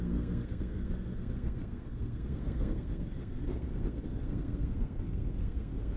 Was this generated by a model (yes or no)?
yes